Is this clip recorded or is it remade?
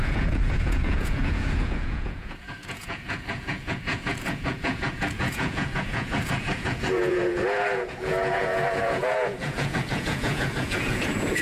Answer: remade